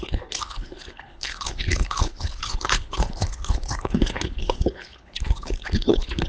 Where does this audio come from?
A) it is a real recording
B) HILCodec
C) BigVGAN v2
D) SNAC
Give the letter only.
B